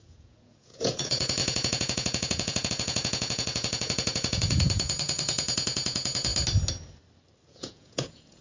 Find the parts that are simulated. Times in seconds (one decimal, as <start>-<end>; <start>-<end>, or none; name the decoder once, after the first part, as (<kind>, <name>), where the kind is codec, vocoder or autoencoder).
0.0-6.3 (vocoder, Vocos); 7.5-8.4